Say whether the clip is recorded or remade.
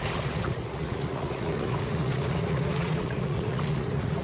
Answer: remade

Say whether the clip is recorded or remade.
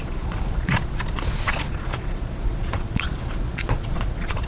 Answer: remade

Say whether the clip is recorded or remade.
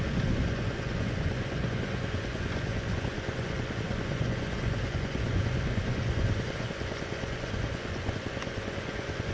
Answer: remade